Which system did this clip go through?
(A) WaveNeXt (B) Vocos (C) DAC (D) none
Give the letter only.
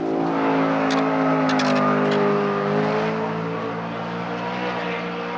D